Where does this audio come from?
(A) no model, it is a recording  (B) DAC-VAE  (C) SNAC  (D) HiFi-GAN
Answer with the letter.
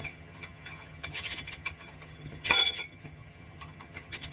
D